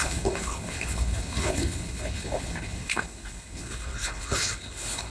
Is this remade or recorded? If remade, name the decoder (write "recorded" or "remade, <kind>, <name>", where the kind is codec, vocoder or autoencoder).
remade, codec, HILCodec